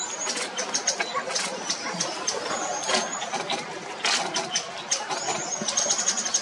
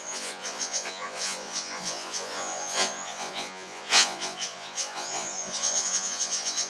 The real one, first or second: first